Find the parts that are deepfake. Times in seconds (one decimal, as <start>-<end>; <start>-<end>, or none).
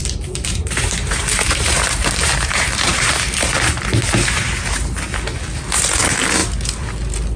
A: 0.0-3.1